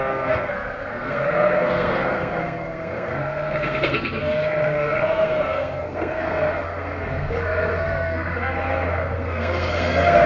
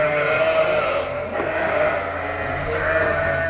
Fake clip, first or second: first